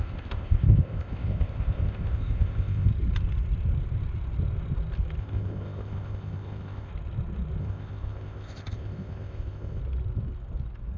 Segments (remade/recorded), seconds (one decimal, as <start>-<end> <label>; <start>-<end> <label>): 0.0-2.9 remade; 2.9-5.2 recorded; 5.2-6.9 remade; 6.9-7.6 recorded; 7.6-9.8 remade; 9.8-11.0 recorded